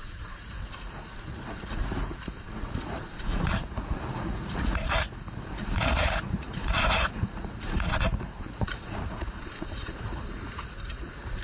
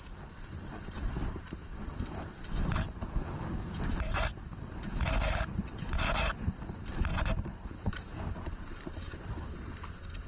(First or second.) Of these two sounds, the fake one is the first